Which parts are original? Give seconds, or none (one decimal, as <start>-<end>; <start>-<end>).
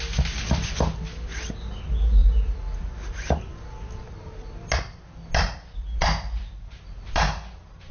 0.0-7.9